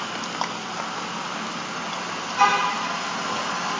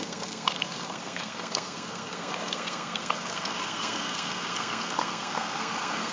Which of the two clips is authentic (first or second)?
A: first